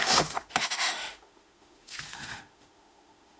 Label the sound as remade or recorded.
remade